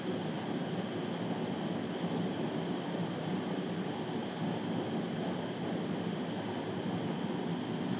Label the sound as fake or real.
real